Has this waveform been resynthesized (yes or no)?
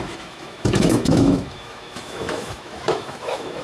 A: yes